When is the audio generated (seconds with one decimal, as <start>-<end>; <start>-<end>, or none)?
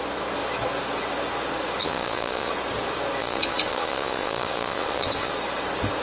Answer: 1.8-2.5; 3.2-5.3